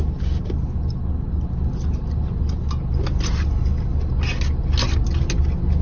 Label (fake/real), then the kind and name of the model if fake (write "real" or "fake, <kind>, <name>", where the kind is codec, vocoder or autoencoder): real